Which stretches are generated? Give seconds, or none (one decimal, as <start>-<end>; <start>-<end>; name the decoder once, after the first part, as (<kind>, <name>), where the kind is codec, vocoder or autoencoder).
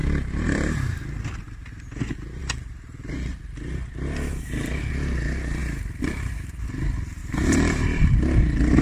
0.0-1.0 (vocoder, BigVGAN v2); 2.4-4.9; 5.6-6.3; 7.2-7.8